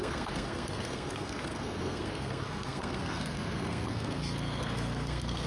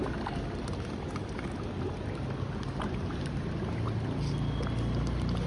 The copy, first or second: first